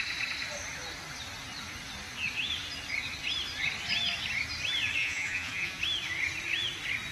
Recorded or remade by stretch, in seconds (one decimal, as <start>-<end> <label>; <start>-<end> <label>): 0.0-5.0 recorded; 5.0-5.8 remade; 5.8-7.1 recorded